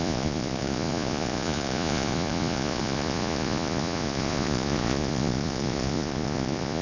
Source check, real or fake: fake